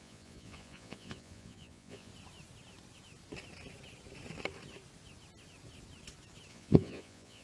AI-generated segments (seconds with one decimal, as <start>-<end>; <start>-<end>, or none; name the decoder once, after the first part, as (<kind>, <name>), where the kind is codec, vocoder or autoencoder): 0.0-2.1 (vocoder, Vocos); 6.5-7.4